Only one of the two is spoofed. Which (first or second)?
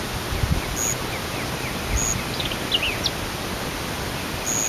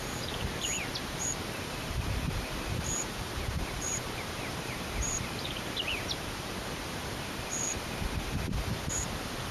second